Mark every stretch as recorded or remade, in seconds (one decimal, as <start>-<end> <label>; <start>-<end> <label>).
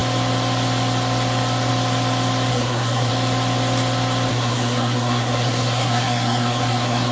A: 0.0-2.5 recorded; 2.5-3.1 remade; 3.1-4.3 recorded; 4.3-7.1 remade